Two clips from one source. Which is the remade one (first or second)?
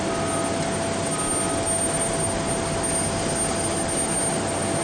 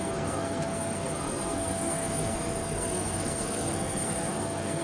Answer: second